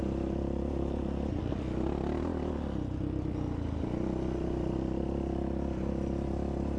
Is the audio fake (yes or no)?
no